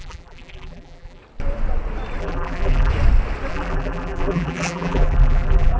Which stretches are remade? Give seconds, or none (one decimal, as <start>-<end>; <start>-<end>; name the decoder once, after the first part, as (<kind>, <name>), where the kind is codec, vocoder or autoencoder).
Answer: 0.0-1.2 (vocoder, BigVGAN v2); 2.2-2.9; 3.5-5.8